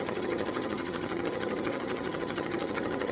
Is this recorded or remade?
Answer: remade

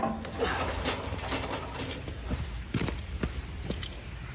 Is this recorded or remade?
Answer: recorded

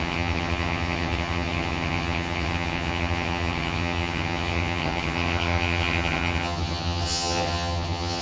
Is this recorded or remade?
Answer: remade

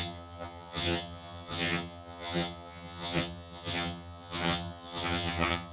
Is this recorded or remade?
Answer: remade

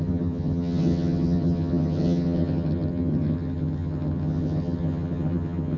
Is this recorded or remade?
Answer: remade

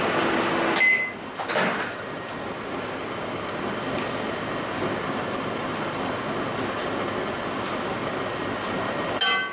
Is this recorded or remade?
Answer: recorded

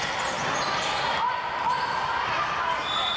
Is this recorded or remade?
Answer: recorded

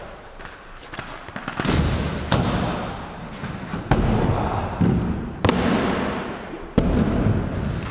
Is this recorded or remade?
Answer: recorded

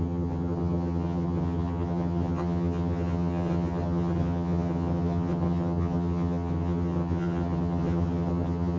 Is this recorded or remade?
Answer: remade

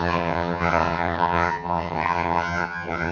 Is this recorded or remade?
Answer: remade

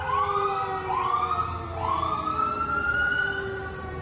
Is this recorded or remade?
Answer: recorded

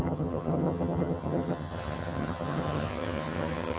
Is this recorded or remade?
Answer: remade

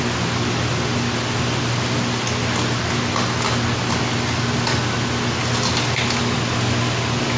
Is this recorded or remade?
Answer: recorded